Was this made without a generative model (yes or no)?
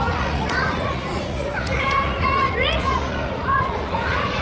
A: no